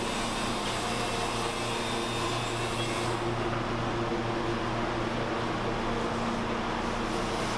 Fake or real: real